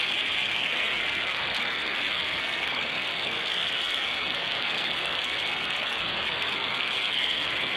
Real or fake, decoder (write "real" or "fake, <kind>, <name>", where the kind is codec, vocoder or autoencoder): fake, codec, SNAC